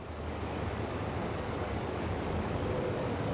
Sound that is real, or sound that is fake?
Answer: fake